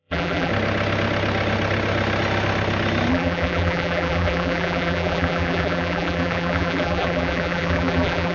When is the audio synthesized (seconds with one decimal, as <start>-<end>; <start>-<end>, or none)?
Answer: 0.0-0.5; 3.1-8.3